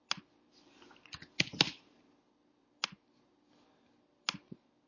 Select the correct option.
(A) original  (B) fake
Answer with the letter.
A